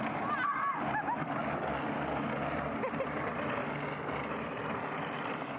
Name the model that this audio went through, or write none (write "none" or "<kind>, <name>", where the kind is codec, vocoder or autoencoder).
none